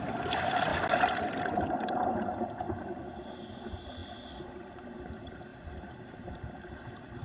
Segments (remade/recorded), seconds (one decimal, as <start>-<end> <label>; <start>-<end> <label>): 0.0-5.5 recorded; 5.5-6.3 remade; 6.3-7.2 recorded